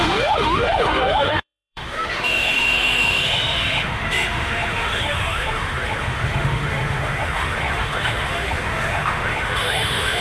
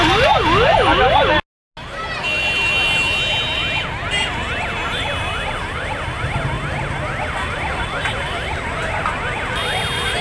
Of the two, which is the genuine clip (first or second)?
second